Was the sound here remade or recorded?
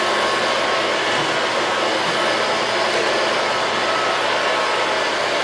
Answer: recorded